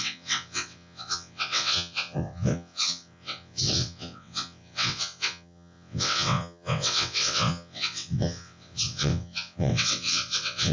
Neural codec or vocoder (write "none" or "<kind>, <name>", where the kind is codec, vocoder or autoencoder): vocoder, WaveNeXt